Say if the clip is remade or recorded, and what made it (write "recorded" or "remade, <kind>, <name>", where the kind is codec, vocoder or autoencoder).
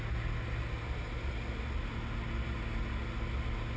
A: recorded